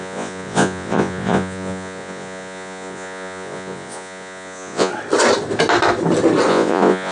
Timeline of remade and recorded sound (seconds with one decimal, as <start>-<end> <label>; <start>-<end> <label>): 0.0-4.9 remade; 4.9-6.5 recorded; 6.5-7.1 remade